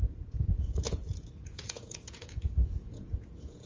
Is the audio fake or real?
fake